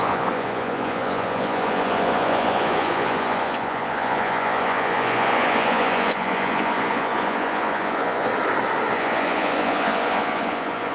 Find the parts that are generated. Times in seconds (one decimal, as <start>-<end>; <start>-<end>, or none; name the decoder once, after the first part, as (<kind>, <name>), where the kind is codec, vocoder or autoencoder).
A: 0.0-8.3 (vocoder, Vocos); 8.9-10.9